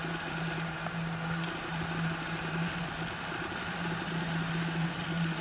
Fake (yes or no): no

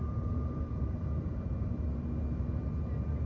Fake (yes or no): yes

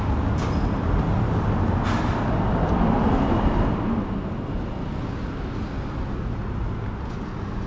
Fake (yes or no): no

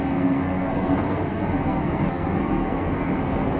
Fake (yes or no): yes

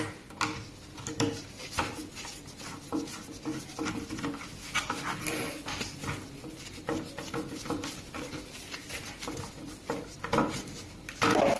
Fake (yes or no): no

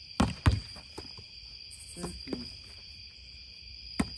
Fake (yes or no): no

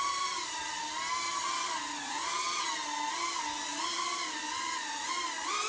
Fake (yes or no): no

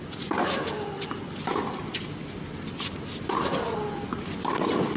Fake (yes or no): no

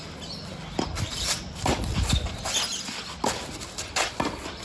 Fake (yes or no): no